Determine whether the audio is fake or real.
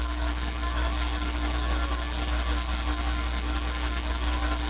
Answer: fake